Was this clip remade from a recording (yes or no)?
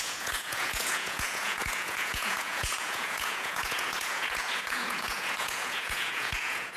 yes